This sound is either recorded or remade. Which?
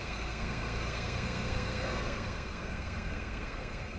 remade